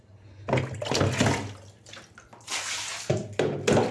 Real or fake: real